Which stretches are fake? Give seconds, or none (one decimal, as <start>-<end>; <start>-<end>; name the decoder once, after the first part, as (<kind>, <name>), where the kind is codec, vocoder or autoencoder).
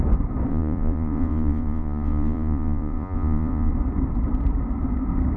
0.5-3.7 (vocoder, Vocos)